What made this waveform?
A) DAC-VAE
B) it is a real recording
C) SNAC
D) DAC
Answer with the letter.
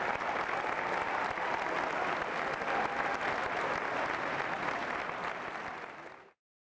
B